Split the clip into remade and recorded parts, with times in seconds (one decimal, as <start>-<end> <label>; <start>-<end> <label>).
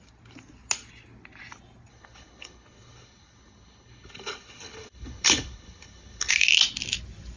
0.0-1.9 recorded; 1.9-6.3 remade; 6.3-7.4 recorded